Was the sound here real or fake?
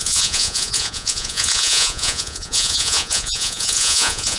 fake